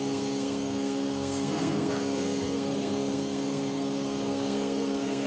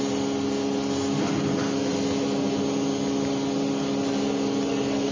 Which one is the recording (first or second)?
second